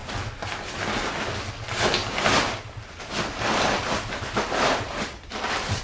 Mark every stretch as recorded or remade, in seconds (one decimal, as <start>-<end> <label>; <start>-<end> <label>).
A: 0.0-2.0 recorded; 2.0-5.8 remade